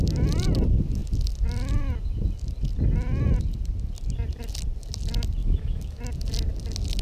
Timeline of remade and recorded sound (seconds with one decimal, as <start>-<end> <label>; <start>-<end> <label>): 0.0-5.4 recorded; 5.4-6.0 remade; 6.0-7.0 recorded